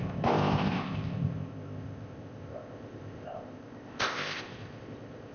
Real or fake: fake